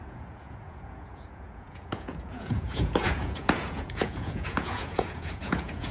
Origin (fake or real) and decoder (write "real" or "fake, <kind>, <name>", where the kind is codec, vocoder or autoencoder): fake, vocoder, Vocos